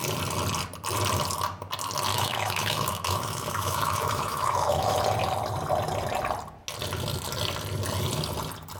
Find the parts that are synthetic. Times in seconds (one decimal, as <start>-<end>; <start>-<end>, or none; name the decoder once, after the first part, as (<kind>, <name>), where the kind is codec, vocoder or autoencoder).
2.1-5.0 (autoencoder, DAC-VAE)

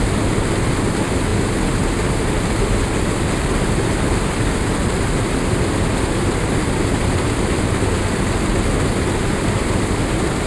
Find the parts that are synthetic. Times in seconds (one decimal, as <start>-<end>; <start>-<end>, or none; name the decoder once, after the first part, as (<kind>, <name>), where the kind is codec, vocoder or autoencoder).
none

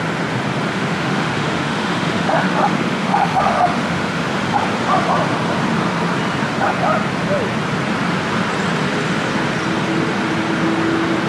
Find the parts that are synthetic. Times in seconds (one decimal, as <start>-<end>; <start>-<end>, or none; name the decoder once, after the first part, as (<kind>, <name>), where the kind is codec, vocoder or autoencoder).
0.7-4.4 (autoencoder, DAC-VAE)

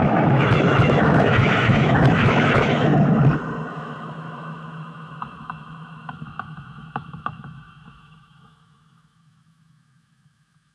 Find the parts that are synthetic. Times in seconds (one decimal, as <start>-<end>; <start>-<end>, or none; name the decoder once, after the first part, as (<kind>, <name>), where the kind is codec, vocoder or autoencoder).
0.0-2.9 (autoencoder, DAC-VAE); 3.7-10.7

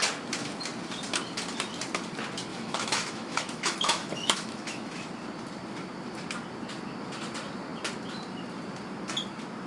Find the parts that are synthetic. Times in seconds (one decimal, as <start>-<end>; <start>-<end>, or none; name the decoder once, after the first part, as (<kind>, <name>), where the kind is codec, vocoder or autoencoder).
2.5-5.0 (autoencoder, DAC-VAE)

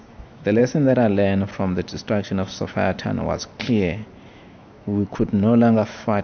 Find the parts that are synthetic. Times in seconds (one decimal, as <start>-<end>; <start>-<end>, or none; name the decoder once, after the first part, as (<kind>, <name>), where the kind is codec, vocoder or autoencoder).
0.0-0.6 (autoencoder, DAC-VAE); 4.3-6.2

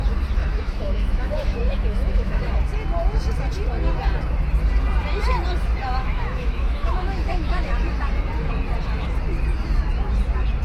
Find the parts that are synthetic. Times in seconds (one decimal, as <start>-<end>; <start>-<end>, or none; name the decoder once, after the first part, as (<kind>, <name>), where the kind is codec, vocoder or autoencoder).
0.4-2.5 (autoencoder, DAC-VAE); 6.0-7.7

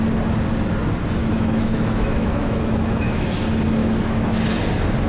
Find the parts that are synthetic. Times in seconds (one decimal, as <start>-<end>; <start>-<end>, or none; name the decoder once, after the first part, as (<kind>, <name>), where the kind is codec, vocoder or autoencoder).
1.2-3.4 (autoencoder, DAC-VAE); 3.8-4.4